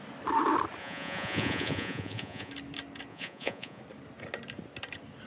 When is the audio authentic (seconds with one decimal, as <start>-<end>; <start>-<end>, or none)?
0.0-0.8; 2.5-3.1; 3.8-5.3